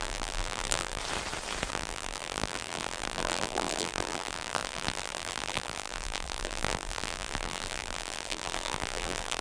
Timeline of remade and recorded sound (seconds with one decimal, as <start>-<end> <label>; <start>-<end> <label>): 0.0-1.0 remade; 1.0-1.7 recorded; 1.7-9.4 remade